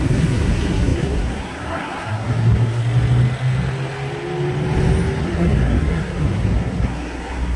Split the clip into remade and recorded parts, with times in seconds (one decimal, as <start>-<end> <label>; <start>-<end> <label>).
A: 0.0-2.8 remade; 2.8-5.2 recorded; 5.2-7.6 remade